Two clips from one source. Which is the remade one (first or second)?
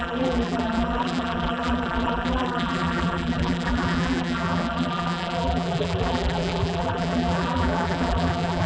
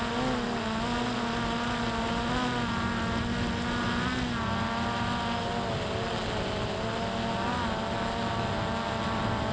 first